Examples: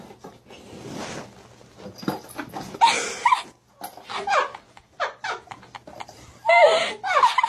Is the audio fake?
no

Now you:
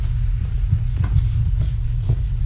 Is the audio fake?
yes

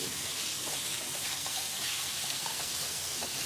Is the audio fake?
yes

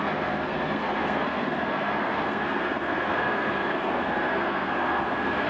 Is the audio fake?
yes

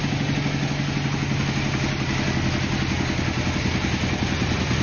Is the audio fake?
no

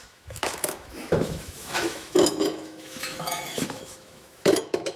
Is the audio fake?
yes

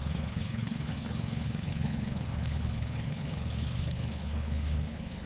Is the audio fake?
yes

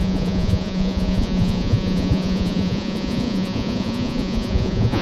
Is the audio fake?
yes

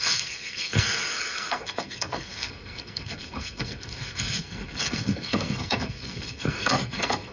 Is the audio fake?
yes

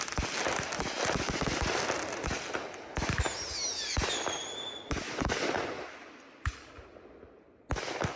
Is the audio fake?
no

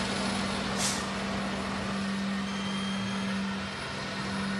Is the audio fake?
no